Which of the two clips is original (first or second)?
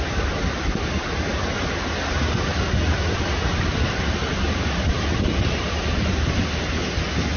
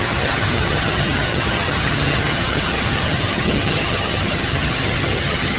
first